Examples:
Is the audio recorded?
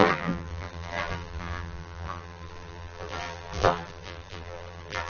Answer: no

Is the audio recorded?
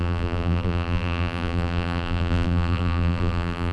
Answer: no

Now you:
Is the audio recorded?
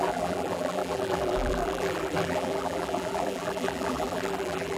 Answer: no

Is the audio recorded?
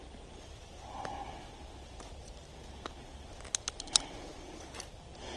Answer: yes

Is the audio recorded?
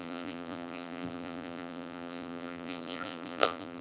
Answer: no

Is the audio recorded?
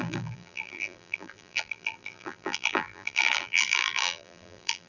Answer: no